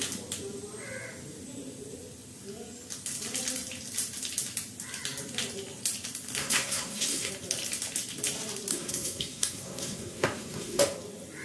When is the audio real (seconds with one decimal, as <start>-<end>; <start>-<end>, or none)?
0.0-6.4; 7.3-8.7; 10.8-11.4